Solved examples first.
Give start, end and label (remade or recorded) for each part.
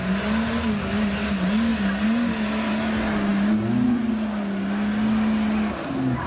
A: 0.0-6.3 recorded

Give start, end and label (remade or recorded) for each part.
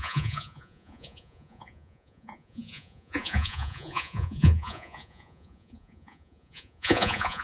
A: 0.0-7.4 remade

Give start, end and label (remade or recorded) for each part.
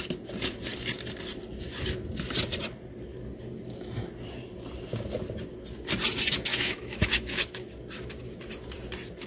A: 0.0-6.5 recorded; 6.5-7.7 remade; 7.7-9.3 recorded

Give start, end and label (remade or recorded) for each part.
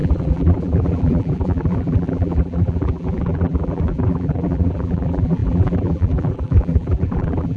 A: 0.0-7.6 remade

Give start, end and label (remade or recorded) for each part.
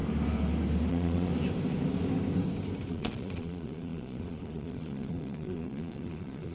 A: 0.0-0.9 recorded; 0.9-1.3 remade; 1.3-2.9 recorded; 2.9-6.5 remade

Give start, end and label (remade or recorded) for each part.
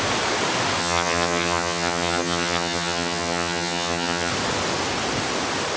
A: 0.0-0.8 recorded; 0.8-4.3 remade; 4.3-5.8 recorded